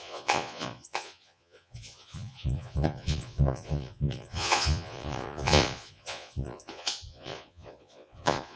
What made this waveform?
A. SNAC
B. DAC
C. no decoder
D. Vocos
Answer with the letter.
D